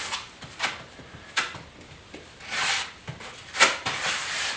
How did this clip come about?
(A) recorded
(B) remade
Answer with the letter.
B